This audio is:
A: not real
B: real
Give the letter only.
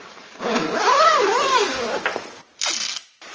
A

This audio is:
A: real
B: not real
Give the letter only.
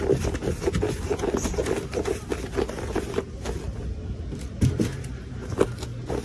A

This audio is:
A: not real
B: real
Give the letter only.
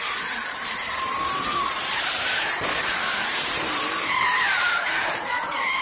A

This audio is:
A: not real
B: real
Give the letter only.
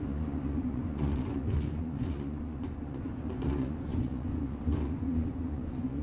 A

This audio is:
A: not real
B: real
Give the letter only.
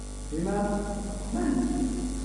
B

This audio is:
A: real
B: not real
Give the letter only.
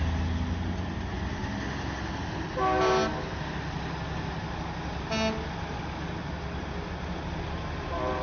A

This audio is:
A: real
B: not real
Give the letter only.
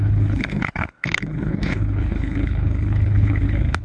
B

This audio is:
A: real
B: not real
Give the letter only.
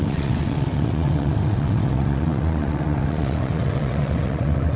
B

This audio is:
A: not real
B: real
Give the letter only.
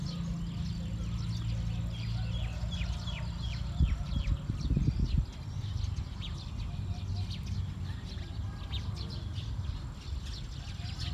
B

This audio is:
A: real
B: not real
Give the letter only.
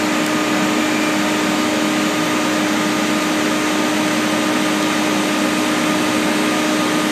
A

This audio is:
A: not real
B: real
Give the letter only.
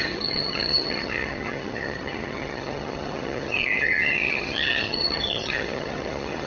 A